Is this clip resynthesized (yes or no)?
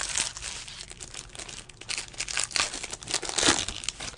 no